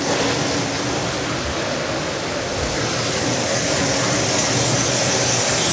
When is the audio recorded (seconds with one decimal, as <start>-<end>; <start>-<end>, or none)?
none